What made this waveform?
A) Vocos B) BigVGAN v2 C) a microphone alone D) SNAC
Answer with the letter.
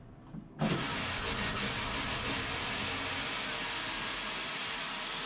C